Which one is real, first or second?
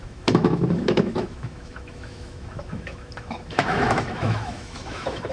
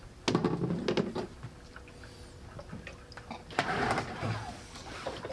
second